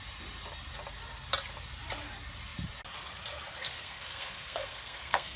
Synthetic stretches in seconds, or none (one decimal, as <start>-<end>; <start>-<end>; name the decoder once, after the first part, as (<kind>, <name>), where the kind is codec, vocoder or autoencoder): 3.6-5.4 (codec, SNAC)